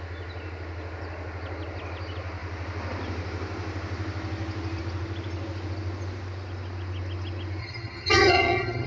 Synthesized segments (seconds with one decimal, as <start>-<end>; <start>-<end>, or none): 7.6-8.9

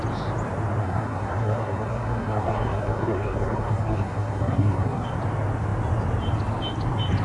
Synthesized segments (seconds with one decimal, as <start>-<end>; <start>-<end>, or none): 0.8-5.1

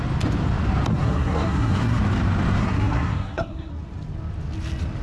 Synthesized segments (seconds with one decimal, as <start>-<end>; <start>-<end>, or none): 0.9-2.0; 2.6-3.7

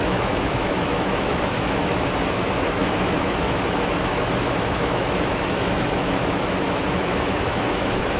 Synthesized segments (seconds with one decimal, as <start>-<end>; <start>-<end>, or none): 0.0-8.2

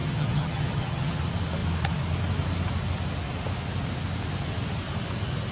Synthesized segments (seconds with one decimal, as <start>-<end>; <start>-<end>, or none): 0.0-1.2